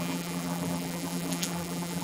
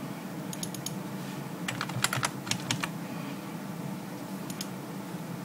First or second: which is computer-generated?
first